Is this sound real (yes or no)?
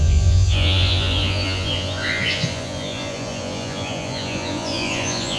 no